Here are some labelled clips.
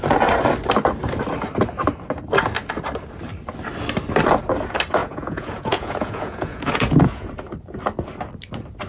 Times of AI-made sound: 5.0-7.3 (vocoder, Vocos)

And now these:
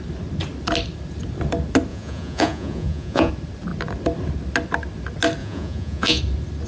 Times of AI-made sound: 1.9-3.3 (vocoder, Vocos); 5.4-6.2

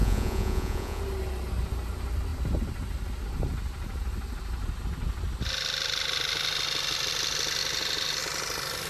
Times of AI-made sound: 0.0-1.0 (vocoder, Vocos)

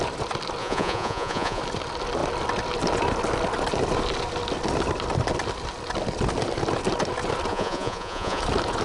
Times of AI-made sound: 0.6-1.6 (vocoder, Vocos); 7.5-8.4

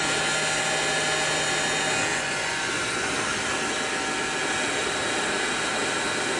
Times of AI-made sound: 2.1-3.1 (vocoder, Vocos)

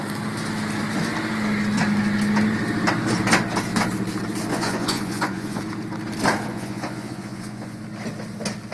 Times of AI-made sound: 4.5-5.6 (vocoder, Vocos); 6.5-7.8

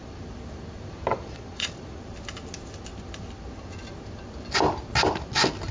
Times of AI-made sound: 1.1-2.0 (vocoder, Vocos)

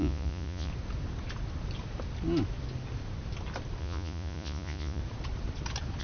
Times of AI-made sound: 0.0-0.7 (vocoder, Vocos); 3.8-5.0